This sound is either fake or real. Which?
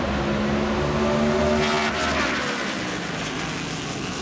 real